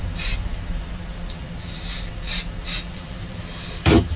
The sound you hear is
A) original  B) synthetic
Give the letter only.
B